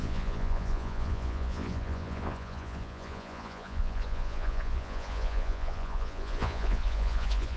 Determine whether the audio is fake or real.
fake